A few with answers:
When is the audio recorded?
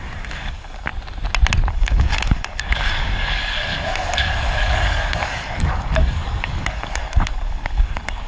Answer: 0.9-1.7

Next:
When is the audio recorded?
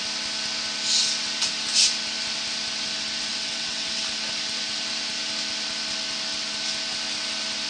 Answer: 0.0-3.3; 4.0-7.7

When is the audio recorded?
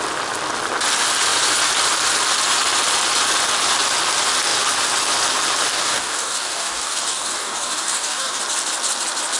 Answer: 0.0-5.7; 8.4-9.4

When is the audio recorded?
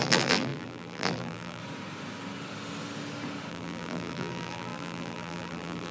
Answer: 1.6-3.5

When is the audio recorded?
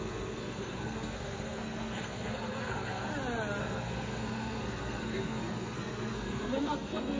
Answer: 3.1-3.6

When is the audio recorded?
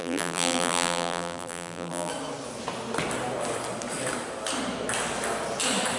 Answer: 2.1-6.0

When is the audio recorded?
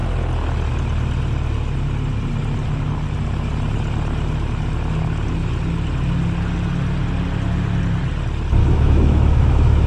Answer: 0.0-8.6